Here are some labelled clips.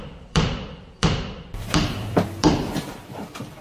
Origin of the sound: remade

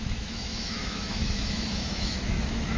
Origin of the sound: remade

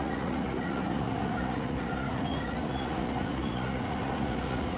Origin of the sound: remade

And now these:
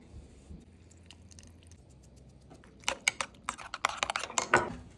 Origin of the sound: recorded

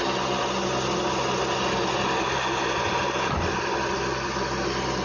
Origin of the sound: recorded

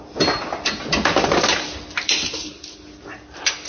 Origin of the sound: recorded